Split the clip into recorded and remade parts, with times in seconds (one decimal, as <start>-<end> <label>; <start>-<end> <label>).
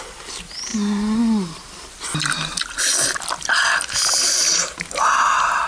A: 0.0-5.7 recorded